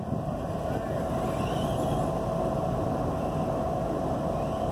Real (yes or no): yes